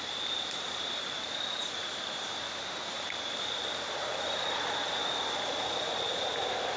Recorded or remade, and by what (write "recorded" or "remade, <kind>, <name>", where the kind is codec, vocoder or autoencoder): remade, vocoder, BigVGAN v2